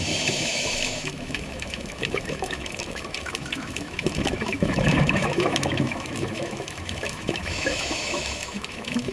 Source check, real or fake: fake